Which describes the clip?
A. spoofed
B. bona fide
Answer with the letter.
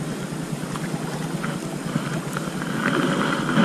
B